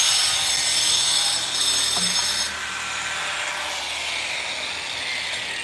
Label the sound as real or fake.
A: real